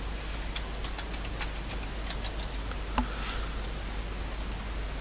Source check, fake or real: real